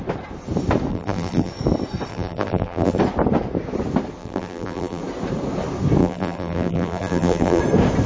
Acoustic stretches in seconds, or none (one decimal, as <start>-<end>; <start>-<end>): 0.0-0.9; 1.5-2.1; 3.0-4.2; 5.0-6.0; 7.6-8.1